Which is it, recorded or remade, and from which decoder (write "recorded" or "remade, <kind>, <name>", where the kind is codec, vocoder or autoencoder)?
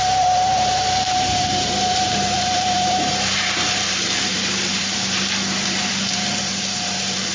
remade, vocoder, BigVGAN v2